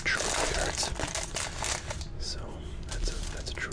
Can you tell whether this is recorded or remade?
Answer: recorded